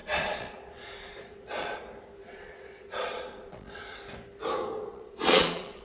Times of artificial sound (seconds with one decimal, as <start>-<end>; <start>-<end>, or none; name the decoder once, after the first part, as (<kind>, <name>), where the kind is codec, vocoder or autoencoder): 0.0-1.8 (vocoder, Vocos); 2.2-4.0; 4.9-5.8